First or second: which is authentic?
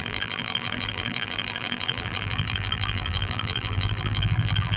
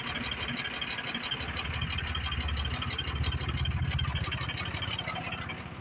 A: second